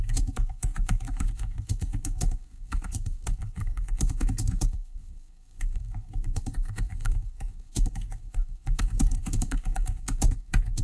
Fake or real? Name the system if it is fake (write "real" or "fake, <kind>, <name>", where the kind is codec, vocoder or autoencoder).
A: fake, codec, SNAC